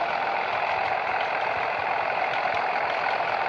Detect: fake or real real